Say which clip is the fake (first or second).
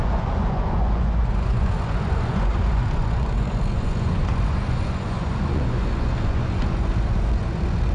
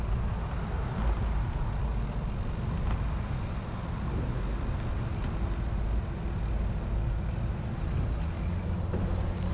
first